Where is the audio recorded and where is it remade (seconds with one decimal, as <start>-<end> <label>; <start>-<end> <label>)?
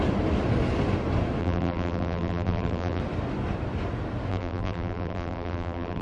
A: 0.0-1.4 recorded; 1.4-3.0 remade; 3.0-4.3 recorded; 4.3-6.0 remade